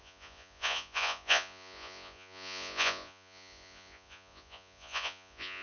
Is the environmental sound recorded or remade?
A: remade